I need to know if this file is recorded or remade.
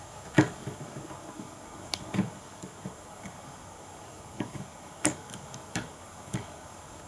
remade